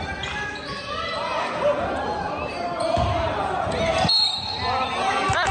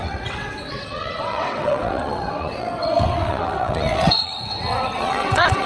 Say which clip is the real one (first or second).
first